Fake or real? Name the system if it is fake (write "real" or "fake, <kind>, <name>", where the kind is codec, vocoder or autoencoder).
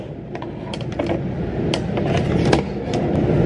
real